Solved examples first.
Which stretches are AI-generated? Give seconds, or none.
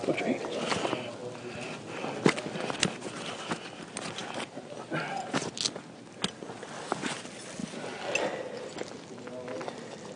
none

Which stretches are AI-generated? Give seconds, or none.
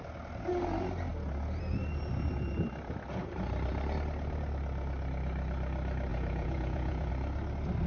6.1-7.1 (vocoder, Vocos)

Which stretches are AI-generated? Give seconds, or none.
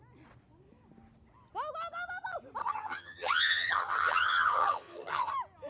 2.6-5.3 (vocoder, HiFi-GAN)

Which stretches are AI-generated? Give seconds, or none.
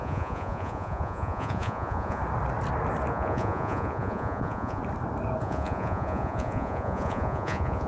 0.0-2.2 (vocoder, Vocos); 3.1-4.8; 5.4-7.9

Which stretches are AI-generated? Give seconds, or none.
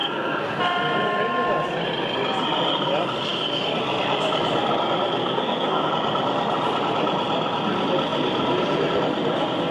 0.0-0.6 (codec, SNAC); 5.2-5.9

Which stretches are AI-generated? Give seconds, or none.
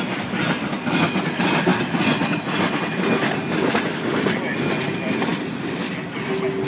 none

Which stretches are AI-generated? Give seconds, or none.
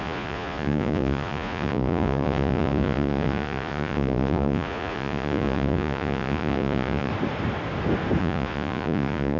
0.0-7.1 (vocoder, Vocos); 8.2-9.4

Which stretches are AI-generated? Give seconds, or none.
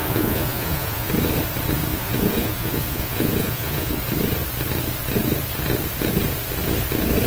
0.0-1.1 (vocoder, Vocos); 1.9-4.0